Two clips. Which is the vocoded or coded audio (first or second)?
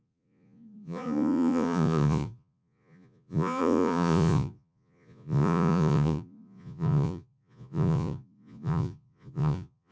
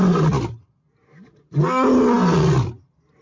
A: first